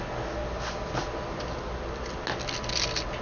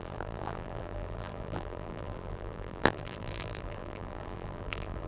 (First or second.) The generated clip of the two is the second